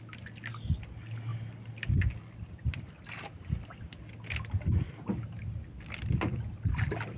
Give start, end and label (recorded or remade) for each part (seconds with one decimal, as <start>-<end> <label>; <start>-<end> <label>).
0.0-7.2 recorded